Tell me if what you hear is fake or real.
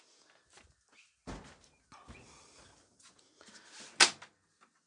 real